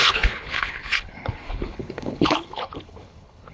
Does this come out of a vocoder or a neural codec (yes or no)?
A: yes